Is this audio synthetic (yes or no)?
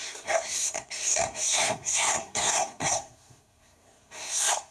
yes